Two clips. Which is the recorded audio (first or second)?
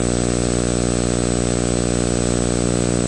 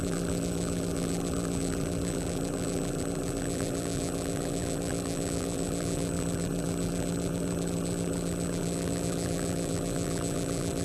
first